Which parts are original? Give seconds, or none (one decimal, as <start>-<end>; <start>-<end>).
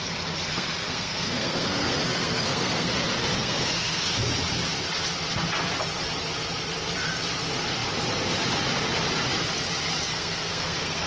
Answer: 0.0-0.5; 2.9-3.3; 4.1-10.1